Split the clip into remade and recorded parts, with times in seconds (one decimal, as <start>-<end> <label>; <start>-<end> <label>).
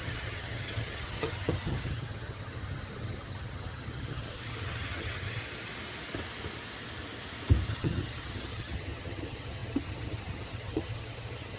0.0-5.4 remade; 5.4-7.7 recorded; 7.7-11.6 remade